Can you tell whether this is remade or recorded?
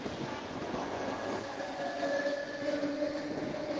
remade